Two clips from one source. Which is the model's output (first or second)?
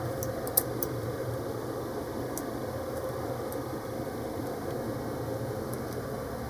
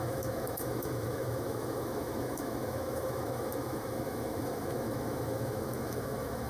second